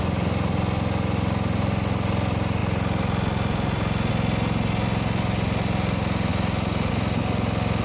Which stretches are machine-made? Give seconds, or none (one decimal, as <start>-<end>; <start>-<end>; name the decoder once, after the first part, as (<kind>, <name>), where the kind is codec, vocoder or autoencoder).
none